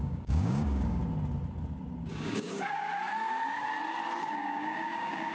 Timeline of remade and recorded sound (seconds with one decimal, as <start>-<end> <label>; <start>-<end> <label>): 0.0-1.0 remade; 1.0-2.1 recorded; 2.1-2.9 remade; 2.9-4.2 recorded; 4.2-5.3 remade